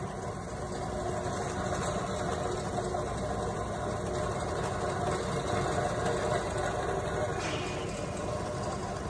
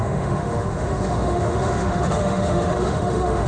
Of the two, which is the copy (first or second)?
second